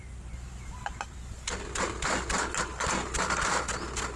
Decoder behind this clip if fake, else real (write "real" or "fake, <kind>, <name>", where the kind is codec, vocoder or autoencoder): real